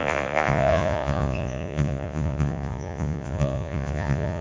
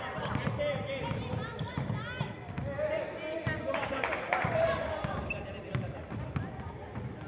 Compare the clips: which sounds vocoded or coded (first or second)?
first